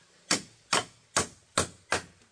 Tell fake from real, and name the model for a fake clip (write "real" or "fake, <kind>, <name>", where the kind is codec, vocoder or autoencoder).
real